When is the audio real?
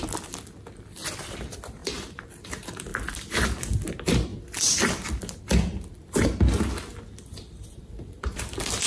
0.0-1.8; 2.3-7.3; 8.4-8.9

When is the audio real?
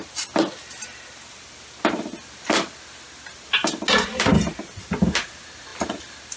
0.0-6.4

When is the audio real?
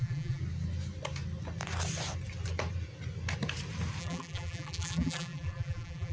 0.4-4.0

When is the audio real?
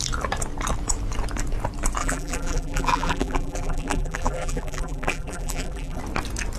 0.0-2.0; 6.0-6.6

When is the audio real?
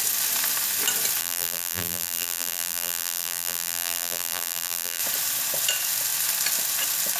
0.0-1.2; 5.0-7.2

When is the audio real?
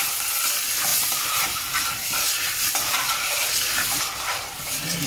0.0-0.9; 4.0-5.1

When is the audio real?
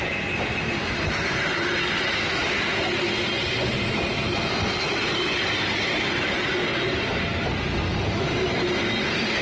0.0-9.4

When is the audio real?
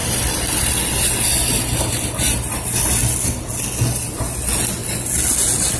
3.4-5.8